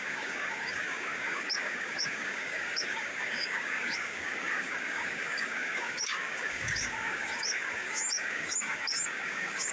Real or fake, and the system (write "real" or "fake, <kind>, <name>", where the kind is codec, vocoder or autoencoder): fake, codec, DAC